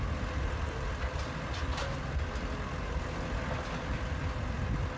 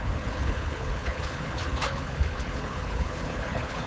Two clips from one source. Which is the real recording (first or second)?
first